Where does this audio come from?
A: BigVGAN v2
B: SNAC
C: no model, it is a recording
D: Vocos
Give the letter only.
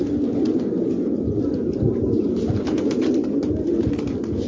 C